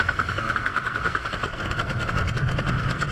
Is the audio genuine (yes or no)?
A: no